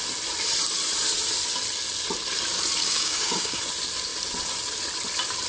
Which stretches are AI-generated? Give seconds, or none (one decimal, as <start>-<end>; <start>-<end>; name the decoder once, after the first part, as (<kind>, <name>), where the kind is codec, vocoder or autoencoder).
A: 2.8-3.6 (codec, DAC)